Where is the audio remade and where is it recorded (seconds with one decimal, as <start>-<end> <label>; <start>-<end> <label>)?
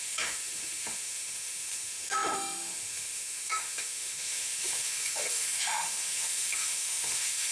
0.0-7.5 remade